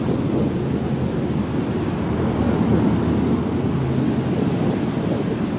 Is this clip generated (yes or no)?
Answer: no